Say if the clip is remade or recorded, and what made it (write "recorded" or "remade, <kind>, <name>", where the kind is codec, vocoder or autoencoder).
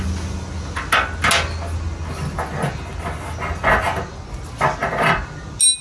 recorded